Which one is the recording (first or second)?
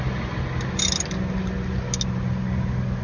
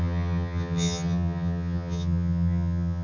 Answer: first